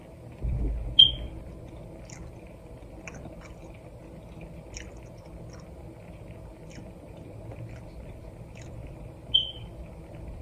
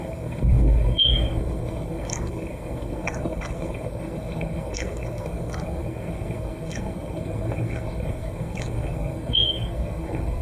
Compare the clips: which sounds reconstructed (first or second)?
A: second